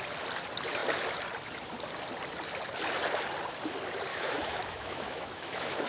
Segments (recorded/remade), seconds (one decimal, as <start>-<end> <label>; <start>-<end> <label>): 0.0-4.1 recorded; 4.1-5.9 remade